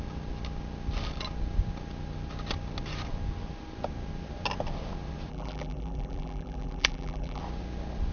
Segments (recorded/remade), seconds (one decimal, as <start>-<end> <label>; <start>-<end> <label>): 0.0-5.3 recorded; 5.3-7.4 remade; 7.4-8.1 recorded